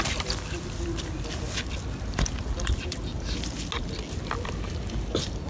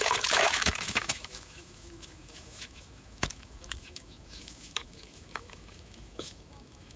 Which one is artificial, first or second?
second